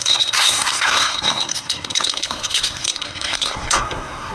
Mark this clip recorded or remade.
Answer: remade